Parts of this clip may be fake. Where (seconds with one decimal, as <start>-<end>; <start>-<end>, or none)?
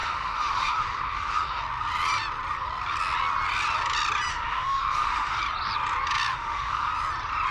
0.0-1.6; 4.3-5.4; 6.3-6.9